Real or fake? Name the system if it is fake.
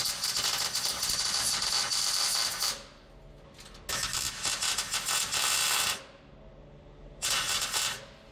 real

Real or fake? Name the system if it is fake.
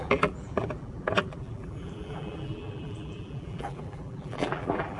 fake, vocoder, BigVGAN v2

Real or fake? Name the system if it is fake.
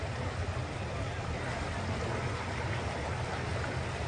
real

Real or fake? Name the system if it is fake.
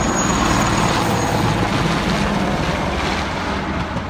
real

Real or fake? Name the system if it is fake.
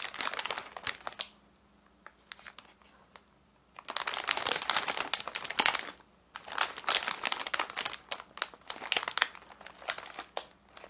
real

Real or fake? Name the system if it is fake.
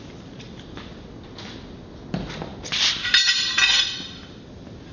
real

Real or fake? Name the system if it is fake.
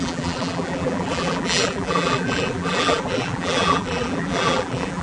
fake, vocoder, BigVGAN v2